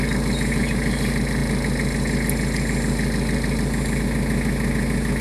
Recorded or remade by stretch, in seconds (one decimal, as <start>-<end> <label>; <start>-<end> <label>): 0.0-5.2 recorded